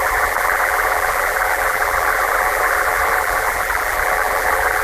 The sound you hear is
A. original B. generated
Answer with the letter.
B